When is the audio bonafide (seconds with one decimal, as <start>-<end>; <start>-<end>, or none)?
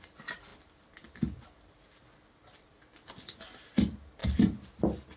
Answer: 0.0-5.2